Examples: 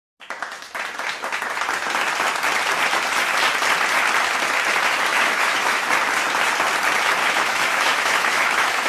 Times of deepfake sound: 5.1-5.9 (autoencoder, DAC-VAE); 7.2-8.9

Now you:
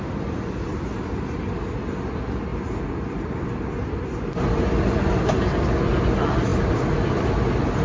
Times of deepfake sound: none

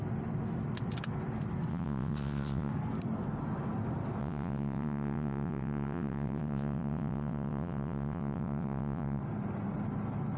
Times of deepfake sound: 1.7-2.7 (vocoder, WaveNeXt); 4.2-9.2

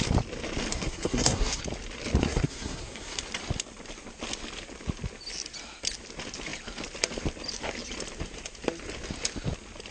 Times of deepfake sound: 0.7-1.6 (codec, SNAC); 2.2-3.2

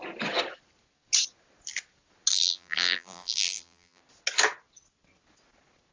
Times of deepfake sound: 2.3-4.0 (vocoder, BigVGAN v2)

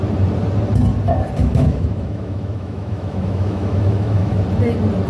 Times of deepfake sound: 1.4-4.4 (autoencoder, DAC-VAE)

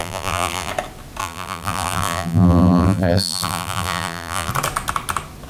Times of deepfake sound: 0.0-0.7 (vocoder, BigVGAN v2); 1.2-4.5

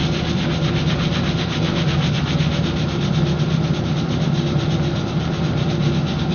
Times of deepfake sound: none